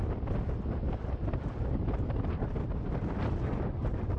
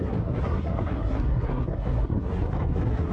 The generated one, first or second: second